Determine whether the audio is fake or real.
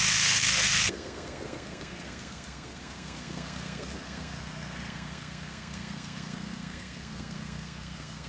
fake